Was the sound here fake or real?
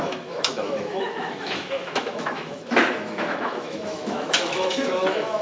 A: fake